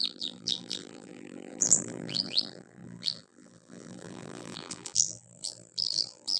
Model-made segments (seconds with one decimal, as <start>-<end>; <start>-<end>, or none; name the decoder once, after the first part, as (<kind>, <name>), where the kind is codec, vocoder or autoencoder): 0.0-6.4 (vocoder, BigVGAN v2)